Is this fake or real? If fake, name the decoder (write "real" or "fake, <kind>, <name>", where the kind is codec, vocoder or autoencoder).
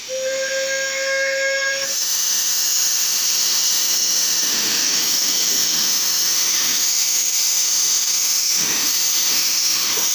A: fake, autoencoder, DAC-VAE